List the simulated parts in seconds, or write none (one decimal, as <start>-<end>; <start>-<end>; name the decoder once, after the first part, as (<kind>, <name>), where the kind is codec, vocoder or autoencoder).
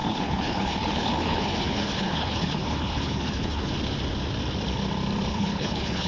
0.0-3.7 (codec, HILCodec); 5.3-6.1